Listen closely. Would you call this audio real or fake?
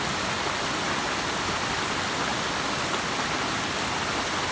real